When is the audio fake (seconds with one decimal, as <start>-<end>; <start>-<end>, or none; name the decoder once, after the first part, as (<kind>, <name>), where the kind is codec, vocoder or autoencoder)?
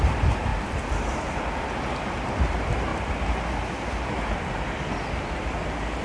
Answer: 0.0-2.9 (vocoder, BigVGAN v2); 5.3-6.0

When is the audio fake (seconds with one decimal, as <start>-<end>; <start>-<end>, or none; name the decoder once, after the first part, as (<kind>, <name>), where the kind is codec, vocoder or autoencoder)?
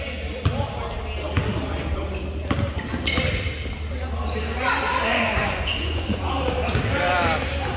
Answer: 5.1-6.3 (vocoder, Vocos)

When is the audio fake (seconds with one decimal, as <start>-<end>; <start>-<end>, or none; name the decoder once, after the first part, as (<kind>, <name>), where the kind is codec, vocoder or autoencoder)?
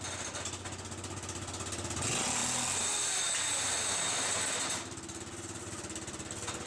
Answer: none